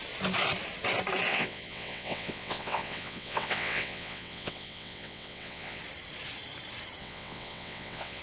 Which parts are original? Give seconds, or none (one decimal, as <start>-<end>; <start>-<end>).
0.0-1.3; 5.8-7.0